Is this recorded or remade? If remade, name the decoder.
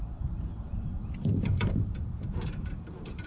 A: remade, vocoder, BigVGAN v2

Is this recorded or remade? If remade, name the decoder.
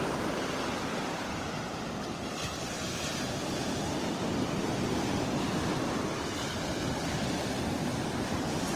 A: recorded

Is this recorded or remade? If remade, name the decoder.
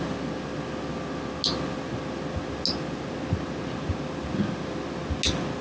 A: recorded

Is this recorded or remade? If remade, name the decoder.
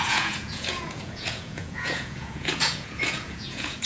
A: remade, vocoder, Vocos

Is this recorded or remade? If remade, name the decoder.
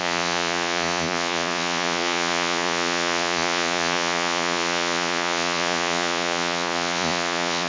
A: remade, vocoder, Vocos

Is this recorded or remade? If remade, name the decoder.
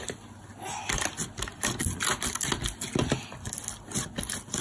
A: recorded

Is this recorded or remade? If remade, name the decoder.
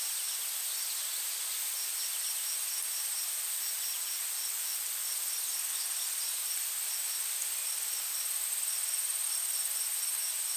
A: recorded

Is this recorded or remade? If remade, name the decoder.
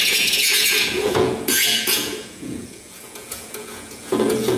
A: remade, vocoder, Vocos